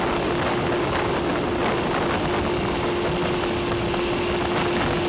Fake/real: real